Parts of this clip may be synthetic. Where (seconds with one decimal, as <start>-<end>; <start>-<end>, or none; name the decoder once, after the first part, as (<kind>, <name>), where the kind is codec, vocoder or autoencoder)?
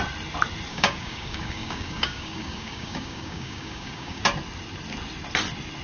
0.7-4.2 (codec, DAC)